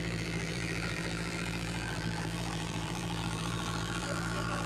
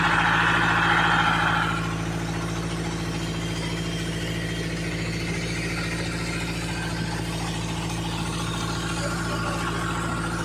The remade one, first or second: first